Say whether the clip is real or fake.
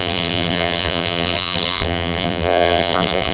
fake